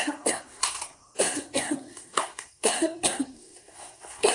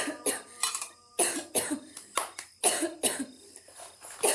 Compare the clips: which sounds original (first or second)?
second